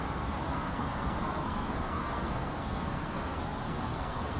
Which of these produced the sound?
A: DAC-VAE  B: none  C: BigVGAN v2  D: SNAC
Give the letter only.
D